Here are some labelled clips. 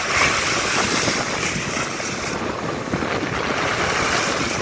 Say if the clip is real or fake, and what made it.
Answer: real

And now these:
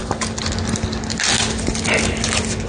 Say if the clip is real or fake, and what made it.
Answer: real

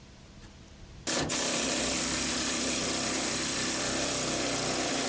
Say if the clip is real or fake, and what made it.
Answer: real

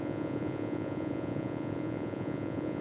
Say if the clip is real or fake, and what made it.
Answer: fake, vocoder, Vocos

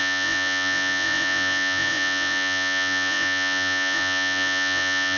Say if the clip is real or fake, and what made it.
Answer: fake, vocoder, Vocos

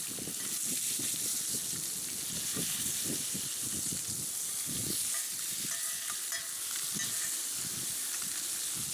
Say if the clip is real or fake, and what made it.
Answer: real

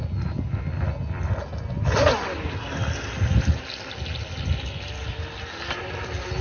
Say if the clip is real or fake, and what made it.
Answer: real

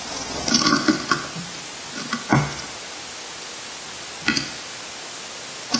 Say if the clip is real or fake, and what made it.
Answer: real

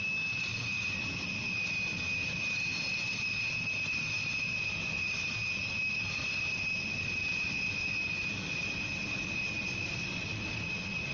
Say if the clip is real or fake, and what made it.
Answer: real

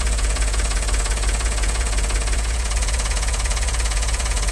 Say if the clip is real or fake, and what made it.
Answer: fake, vocoder, Vocos